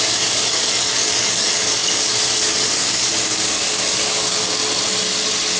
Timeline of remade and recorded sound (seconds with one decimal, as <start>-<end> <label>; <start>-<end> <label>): 0.0-4.6 remade; 4.6-5.6 recorded